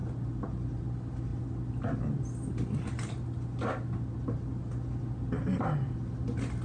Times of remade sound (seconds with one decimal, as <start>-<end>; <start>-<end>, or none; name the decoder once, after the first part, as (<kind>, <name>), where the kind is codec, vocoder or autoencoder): none